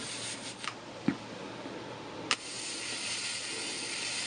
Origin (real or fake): real